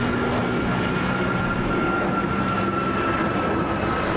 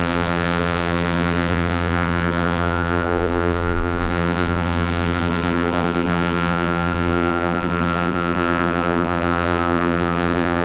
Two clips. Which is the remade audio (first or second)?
second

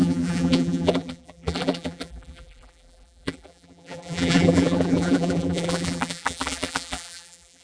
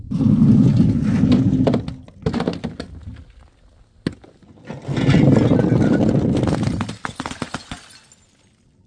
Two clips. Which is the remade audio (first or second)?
first